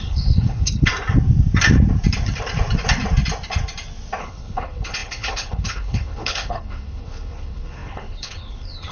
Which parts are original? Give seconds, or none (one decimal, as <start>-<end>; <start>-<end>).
0.9-4.2